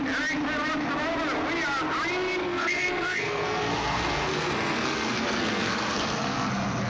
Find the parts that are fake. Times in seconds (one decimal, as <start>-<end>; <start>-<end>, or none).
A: 2.4-6.5

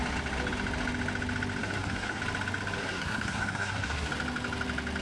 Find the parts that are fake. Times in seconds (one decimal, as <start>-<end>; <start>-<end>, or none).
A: 1.6-2.2; 2.8-4.1

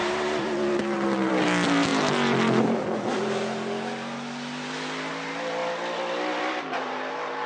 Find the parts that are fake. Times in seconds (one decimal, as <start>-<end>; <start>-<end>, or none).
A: none

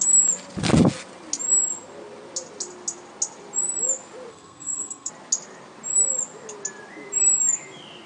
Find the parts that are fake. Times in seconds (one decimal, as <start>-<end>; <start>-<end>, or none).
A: 4.3-5.1

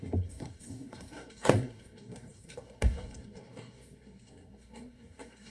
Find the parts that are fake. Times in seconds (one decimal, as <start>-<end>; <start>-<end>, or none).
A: 0.0-5.5